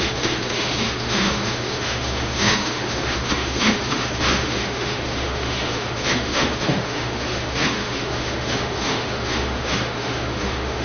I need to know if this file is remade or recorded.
remade